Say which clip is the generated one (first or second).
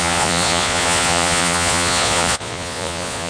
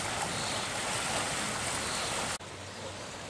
first